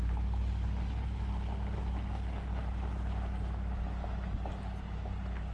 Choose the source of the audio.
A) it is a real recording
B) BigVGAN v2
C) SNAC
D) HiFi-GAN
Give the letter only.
A